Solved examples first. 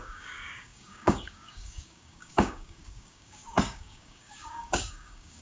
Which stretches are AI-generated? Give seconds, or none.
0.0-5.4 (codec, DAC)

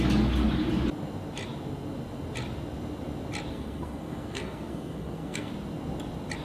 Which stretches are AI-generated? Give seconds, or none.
3.5-5.5 (codec, SNAC)

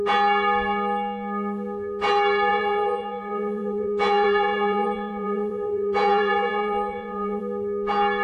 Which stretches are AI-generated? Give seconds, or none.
2.5-7.4 (vocoder, Vocos)

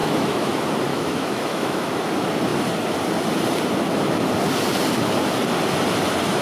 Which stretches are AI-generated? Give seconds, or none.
0.0-0.5 (autoencoder, DAC-VAE); 0.9-1.9

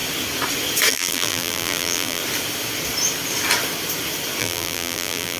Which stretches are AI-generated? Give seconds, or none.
0.9-2.2 (vocoder, BigVGAN v2); 4.4-5.4